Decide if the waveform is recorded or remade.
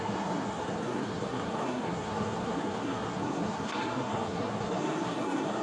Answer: remade